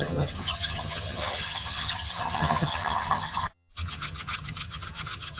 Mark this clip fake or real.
fake